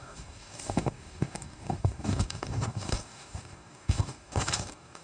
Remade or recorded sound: remade